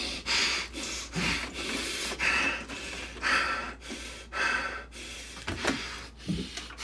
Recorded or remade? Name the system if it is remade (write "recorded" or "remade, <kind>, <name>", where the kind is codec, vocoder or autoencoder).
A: recorded